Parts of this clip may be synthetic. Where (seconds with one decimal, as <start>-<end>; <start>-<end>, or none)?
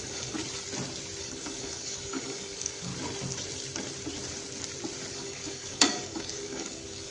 0.0-0.4; 1.2-2.9; 5.1-7.1